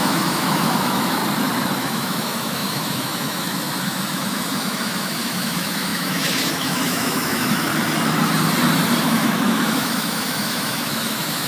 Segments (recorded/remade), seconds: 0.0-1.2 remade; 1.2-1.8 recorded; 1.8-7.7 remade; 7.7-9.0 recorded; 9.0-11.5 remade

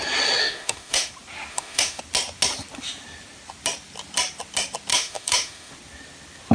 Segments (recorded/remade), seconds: 0.0-0.4 recorded; 0.4-1.1 remade; 1.1-1.5 recorded; 1.5-2.0 remade; 2.0-4.9 recorded; 4.9-5.7 remade; 5.7-6.5 recorded

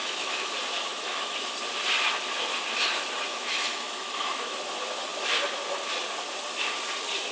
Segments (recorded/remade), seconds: 0.0-0.5 remade; 0.5-0.9 recorded; 0.9-1.5 remade; 1.5-3.3 recorded; 3.3-4.6 remade; 4.6-7.3 recorded

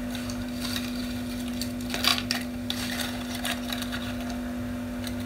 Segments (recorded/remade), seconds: 0.0-5.3 recorded

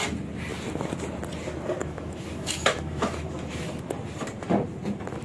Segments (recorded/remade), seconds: 0.0-1.8 recorded; 1.8-3.5 remade; 3.5-5.2 recorded